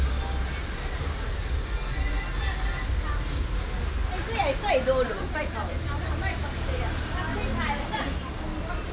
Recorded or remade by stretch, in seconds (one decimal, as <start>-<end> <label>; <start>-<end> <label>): 0.0-8.9 recorded